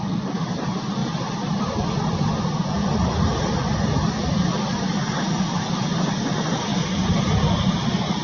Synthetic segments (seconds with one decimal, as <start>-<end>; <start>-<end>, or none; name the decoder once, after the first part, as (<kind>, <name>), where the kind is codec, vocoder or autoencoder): 1.0-2.3 (vocoder, BigVGAN v2); 2.8-3.4